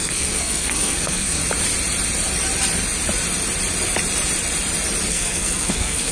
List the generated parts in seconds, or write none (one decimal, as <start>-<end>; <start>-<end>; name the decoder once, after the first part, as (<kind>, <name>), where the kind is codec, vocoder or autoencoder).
0.0-1.4 (codec, SNAC); 5.1-6.1